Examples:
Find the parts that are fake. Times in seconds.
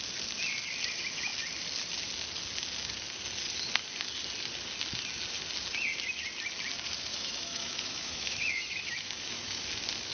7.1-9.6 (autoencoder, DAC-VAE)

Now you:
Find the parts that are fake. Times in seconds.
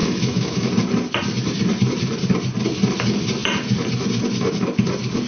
0.0-0.7 (autoencoder, DAC-VAE)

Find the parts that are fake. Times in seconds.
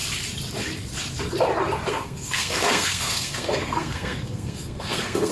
1.9-5.3 (codec, SNAC)